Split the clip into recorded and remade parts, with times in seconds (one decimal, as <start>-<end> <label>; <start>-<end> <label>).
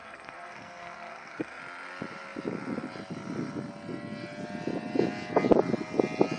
0.0-1.6 remade; 1.6-6.4 recorded